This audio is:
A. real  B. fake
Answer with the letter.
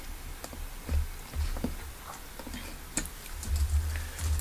A